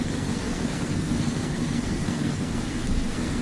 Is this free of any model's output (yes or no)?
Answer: no